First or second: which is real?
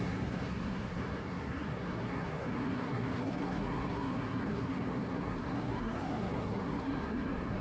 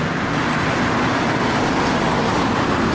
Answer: second